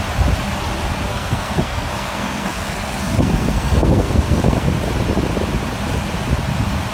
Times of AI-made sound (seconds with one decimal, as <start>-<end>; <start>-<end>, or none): 1.1-4.7